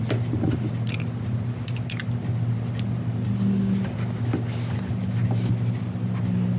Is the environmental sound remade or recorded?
recorded